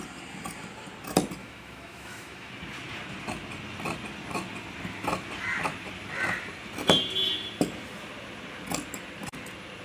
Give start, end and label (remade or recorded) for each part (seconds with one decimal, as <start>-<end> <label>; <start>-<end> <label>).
0.0-1.4 recorded; 1.4-2.5 remade; 2.5-9.8 recorded